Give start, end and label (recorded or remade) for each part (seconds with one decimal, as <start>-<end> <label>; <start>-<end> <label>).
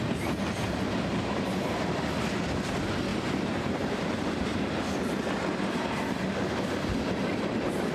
0.0-1.1 recorded; 1.1-1.8 remade; 1.8-3.1 recorded; 3.1-4.7 remade; 4.7-7.9 recorded